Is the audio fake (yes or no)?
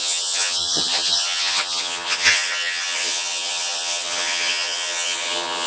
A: yes